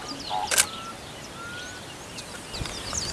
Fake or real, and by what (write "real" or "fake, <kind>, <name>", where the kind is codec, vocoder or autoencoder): real